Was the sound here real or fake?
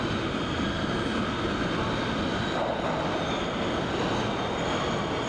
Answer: real